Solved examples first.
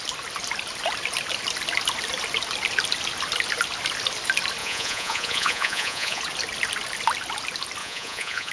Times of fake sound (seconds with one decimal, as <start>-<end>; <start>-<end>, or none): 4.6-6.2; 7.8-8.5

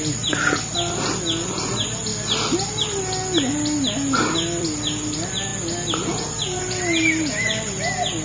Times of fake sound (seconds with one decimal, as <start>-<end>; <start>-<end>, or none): 0.0-2.1; 4.1-5.5; 6.6-8.2

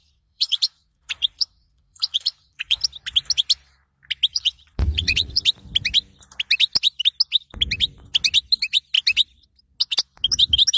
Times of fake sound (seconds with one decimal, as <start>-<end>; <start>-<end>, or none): 0.0-2.8; 4.3-5.4